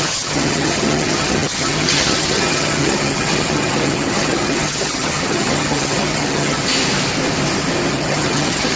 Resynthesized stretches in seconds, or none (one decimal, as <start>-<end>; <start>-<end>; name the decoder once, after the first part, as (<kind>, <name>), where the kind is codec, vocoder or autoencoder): 0.0-6.6 (vocoder, HiFi-GAN); 7.9-8.8